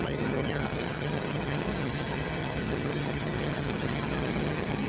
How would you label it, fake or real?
fake